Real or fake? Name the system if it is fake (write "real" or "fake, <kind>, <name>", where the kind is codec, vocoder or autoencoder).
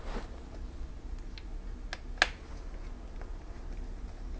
real